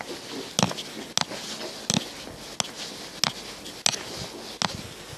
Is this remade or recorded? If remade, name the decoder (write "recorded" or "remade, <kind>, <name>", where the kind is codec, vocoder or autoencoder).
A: recorded